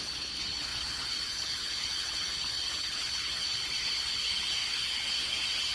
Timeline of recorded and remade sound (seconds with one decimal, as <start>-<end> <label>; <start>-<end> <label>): 0.0-5.7 remade

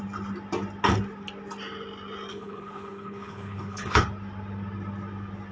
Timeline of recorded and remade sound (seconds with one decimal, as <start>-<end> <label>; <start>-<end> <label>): 0.0-2.3 recorded; 2.3-4.0 remade; 4.0-5.5 recorded

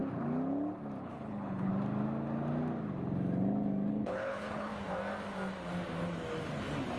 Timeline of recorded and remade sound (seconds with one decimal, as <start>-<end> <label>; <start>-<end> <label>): 0.0-1.0 recorded; 1.0-1.7 remade; 1.7-3.9 recorded; 3.9-4.7 remade; 4.7-7.0 recorded